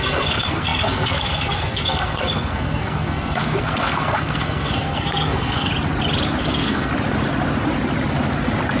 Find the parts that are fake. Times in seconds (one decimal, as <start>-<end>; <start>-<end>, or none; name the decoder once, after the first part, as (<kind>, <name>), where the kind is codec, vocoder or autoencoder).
0.0-5.7 (codec, SNAC); 6.4-6.9